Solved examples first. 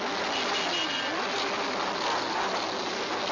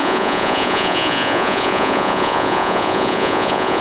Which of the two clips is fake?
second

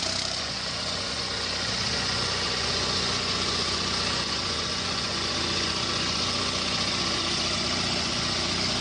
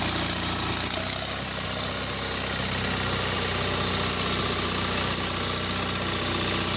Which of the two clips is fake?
first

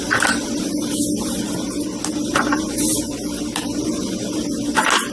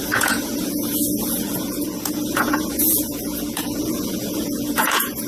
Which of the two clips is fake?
second